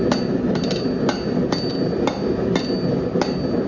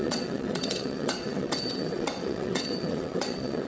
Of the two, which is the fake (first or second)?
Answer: second